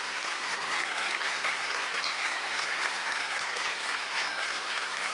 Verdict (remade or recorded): remade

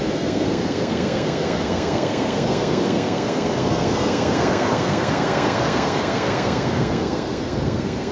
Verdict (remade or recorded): remade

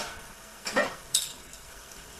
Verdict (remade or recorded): remade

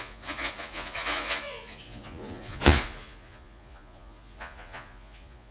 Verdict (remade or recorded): remade